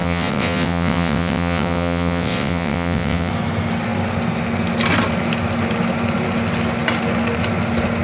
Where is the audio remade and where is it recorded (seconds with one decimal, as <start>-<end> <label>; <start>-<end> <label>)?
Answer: 0.0-3.3 remade; 3.3-8.0 recorded